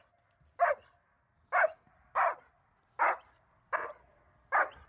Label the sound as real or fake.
real